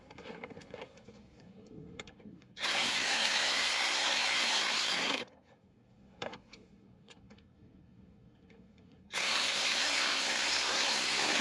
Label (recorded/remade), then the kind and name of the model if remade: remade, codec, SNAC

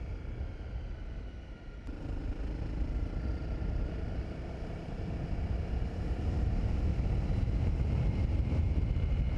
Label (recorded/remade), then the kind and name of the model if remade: recorded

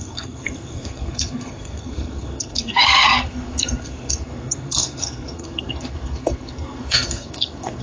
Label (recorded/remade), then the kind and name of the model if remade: remade, codec, SNAC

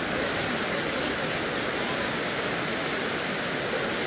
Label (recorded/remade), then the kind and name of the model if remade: recorded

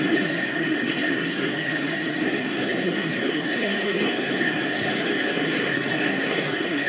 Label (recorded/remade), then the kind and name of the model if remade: remade, codec, SNAC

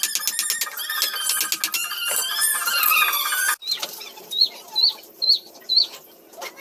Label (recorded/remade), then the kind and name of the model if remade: recorded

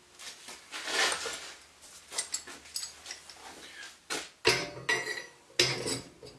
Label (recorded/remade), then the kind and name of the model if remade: recorded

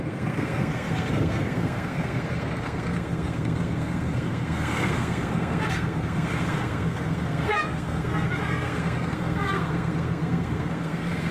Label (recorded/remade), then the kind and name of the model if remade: remade, codec, SNAC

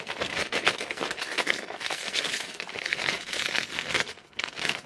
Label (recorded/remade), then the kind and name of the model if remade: remade, codec, SNAC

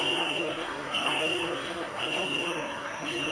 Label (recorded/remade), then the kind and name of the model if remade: remade, codec, SNAC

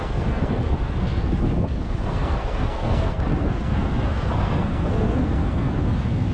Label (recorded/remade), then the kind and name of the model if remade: remade, codec, SNAC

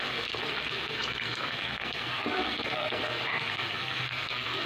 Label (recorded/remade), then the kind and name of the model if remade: remade, codec, SNAC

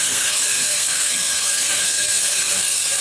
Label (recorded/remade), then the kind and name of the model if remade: remade, codec, SNAC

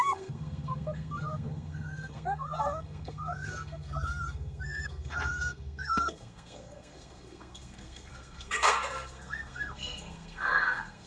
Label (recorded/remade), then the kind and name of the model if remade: remade, codec, SNAC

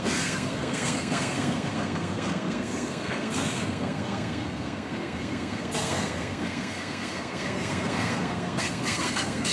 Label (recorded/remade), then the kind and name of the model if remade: remade, codec, SNAC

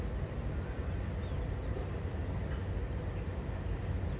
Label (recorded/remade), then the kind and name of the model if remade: recorded